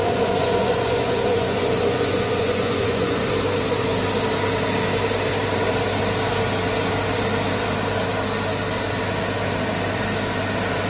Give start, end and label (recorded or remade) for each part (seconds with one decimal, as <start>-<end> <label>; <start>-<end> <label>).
0.0-3.3 remade; 3.3-10.9 recorded